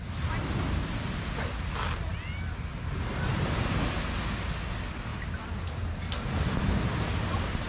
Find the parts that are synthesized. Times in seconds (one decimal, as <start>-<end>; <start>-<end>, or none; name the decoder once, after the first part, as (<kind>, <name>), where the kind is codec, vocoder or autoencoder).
none